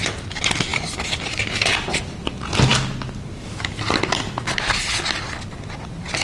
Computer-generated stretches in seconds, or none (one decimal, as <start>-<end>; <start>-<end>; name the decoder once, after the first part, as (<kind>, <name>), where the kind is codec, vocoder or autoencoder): none